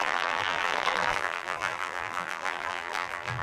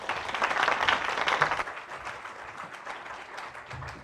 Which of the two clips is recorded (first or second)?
second